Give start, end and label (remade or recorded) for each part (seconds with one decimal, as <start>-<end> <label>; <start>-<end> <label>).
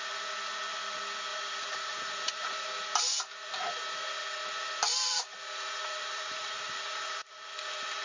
0.0-1.3 recorded; 1.3-2.7 remade; 2.7-4.9 recorded; 4.9-7.3 remade; 7.3-8.0 recorded